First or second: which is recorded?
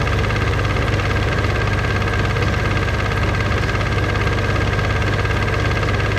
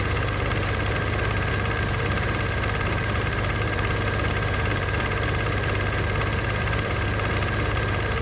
first